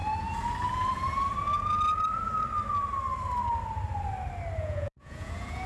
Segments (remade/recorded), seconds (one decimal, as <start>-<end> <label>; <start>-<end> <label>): 0.0-0.7 recorded; 0.7-1.2 remade; 1.2-4.6 recorded; 4.6-5.7 remade